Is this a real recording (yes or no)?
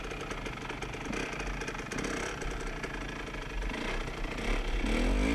yes